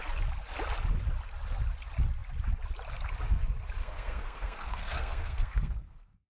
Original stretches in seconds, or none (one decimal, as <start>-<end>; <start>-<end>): 0.0-3.8